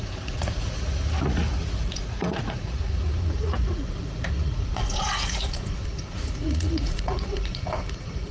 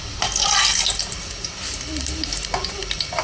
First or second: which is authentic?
second